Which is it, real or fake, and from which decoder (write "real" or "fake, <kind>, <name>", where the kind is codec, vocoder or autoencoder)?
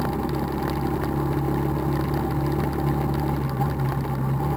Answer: real